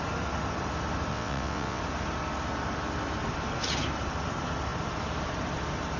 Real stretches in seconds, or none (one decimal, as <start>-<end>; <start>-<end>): 0.0-1.1; 1.8-6.0